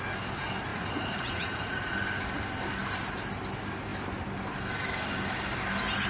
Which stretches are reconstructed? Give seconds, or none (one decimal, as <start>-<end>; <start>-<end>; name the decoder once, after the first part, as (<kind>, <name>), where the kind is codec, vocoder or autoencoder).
0.7-1.9 (vocoder, Vocos)